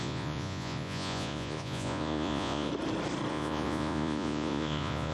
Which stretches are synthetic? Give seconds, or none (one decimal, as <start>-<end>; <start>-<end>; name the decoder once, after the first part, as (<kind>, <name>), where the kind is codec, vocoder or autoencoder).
0.0-2.7 (vocoder, Vocos); 3.3-5.1